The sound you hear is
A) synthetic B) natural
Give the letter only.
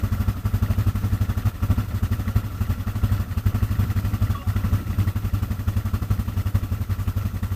B